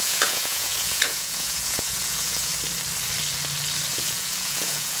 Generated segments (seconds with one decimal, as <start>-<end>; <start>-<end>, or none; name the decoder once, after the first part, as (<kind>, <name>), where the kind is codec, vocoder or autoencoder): 0.0-2.5 (vocoder, Vocos); 3.9-5.0